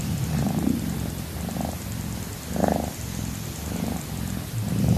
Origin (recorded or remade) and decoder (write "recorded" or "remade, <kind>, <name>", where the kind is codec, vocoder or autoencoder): recorded